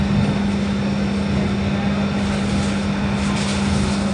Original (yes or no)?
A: yes